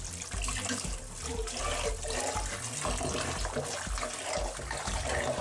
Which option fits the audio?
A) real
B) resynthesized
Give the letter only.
A